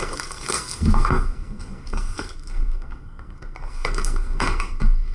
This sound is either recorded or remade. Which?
remade